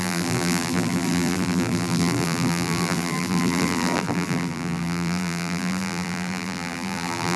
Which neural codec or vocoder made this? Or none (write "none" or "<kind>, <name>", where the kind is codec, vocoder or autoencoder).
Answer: vocoder, BigVGAN v2